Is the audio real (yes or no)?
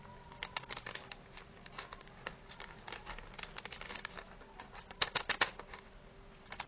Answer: yes